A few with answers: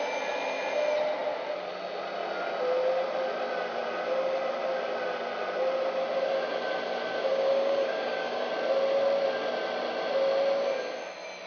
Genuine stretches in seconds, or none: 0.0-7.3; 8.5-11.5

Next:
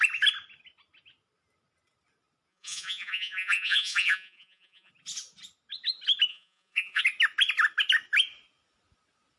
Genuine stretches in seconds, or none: 0.0-2.5; 4.9-6.3; 7.0-9.4

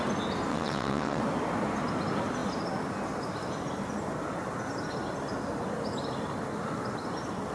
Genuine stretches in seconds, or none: 0.0-0.5; 1.2-7.5

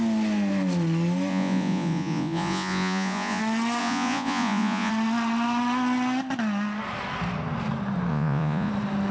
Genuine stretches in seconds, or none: 0.0-1.3; 3.4-3.8; 4.9-8.1; 8.7-9.1

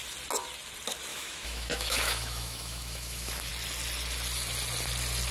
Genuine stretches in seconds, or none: 0.0-1.1; 3.5-5.3

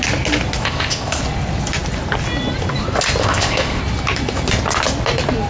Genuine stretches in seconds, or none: 0.0-0.6; 1.2-3.2; 3.8-5.5

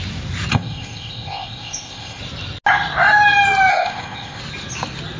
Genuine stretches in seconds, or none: 0.0-0.5; 2.2-3.7; 4.4-5.2

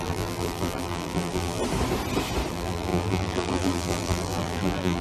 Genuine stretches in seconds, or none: 1.6-2.5